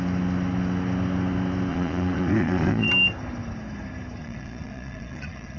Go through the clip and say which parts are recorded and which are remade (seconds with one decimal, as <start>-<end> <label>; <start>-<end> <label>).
0.0-1.7 recorded; 1.7-2.9 remade; 2.9-4.2 recorded; 4.2-5.6 remade